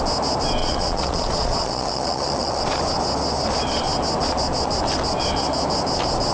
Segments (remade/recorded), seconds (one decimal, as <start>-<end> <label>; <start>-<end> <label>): 0.0-0.6 recorded; 0.6-2.6 remade; 2.6-6.3 recorded